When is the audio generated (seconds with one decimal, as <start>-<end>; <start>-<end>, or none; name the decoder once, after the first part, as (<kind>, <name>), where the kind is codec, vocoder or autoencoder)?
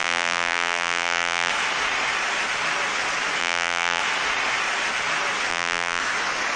0.0-1.5 (vocoder, BigVGAN v2); 3.4-4.0; 5.5-6.0